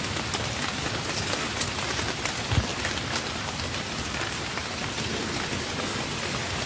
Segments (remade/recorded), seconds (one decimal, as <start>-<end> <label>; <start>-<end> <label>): 0.0-6.7 recorded